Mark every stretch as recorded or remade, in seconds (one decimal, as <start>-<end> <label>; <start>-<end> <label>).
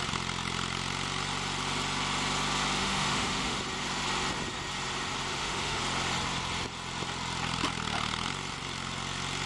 0.0-2.8 recorded; 2.8-3.6 remade; 3.6-5.3 recorded; 5.3-5.8 remade; 5.8-9.5 recorded